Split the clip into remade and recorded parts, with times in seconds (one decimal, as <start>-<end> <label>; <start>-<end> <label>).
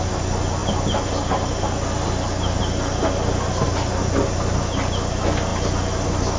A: 0.0-6.4 recorded